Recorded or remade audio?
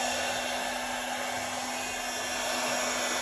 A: recorded